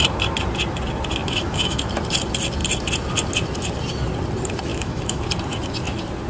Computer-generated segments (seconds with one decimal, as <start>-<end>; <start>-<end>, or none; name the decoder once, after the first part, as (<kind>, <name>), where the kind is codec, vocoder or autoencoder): 1.2-1.9 (autoencoder, DAC-VAE); 4.7-5.2